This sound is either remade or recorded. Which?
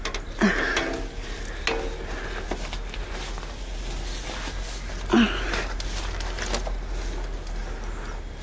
recorded